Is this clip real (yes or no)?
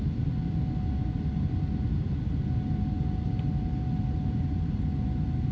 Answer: yes